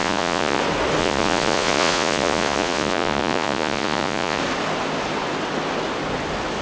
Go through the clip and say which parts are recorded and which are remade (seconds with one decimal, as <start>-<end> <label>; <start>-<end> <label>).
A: 0.0-0.6 remade; 0.6-1.0 recorded; 1.0-4.4 remade; 4.4-6.6 recorded